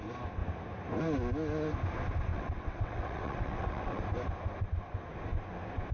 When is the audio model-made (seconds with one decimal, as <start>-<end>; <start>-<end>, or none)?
2.3-4.0

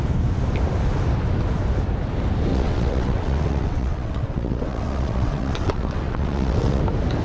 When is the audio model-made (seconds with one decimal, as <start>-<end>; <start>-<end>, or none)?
2.5-6.8